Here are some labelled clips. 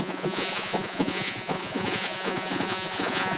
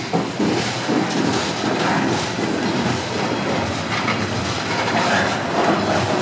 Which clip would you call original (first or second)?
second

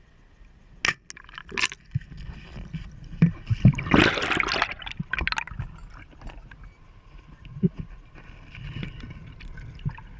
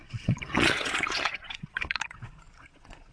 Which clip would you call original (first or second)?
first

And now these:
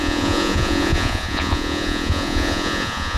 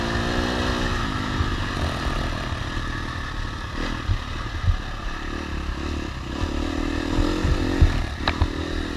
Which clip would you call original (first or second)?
second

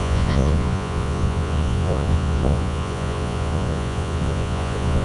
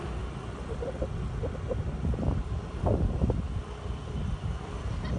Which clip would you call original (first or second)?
second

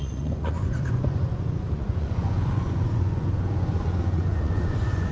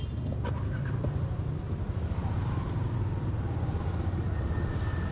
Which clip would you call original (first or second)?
second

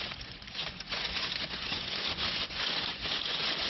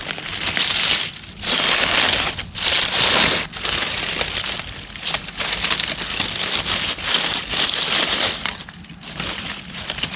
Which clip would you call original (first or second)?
second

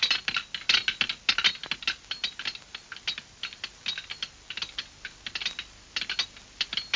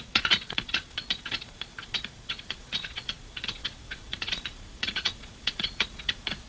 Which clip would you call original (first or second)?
first